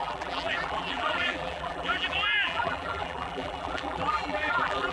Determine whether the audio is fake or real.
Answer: fake